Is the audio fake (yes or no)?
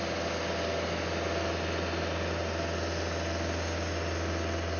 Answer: no